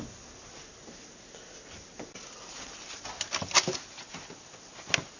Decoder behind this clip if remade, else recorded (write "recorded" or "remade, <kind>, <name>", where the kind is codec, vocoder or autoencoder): recorded